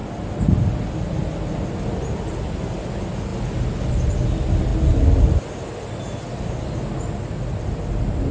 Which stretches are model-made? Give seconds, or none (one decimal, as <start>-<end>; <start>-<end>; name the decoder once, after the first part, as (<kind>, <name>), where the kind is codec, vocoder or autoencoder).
none